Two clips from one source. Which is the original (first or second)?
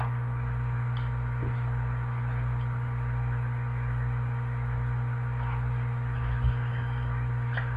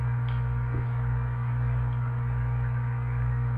first